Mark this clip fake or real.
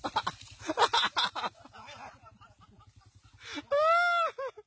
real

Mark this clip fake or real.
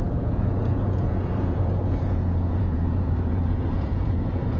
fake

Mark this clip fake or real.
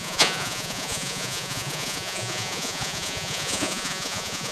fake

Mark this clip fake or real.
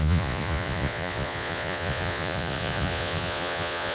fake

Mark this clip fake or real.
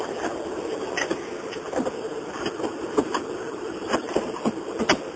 real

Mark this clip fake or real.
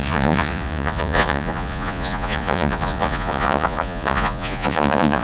fake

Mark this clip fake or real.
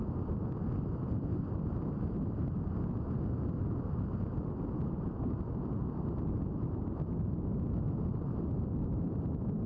real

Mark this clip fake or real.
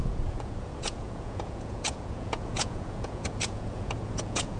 fake